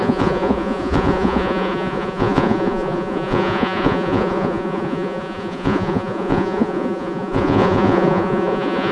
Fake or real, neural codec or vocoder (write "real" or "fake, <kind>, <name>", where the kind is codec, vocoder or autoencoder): fake, vocoder, Vocos